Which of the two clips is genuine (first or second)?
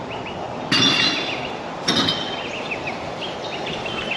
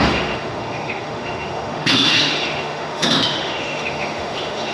first